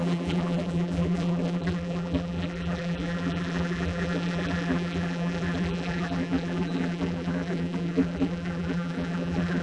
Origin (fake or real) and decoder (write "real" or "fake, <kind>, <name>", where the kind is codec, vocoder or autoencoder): fake, vocoder, BigVGAN v2